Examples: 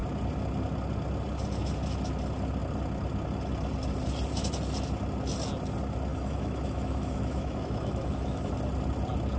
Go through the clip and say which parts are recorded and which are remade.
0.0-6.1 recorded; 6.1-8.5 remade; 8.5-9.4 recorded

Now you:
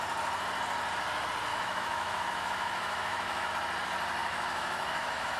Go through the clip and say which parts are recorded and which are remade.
0.0-1.5 recorded; 1.5-3.5 remade; 3.5-4.2 recorded; 4.2-5.4 remade

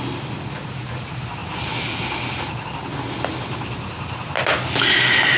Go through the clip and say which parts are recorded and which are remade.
0.0-5.4 recorded